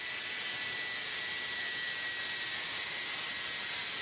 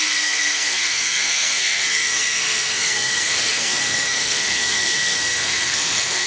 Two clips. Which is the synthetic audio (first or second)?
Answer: second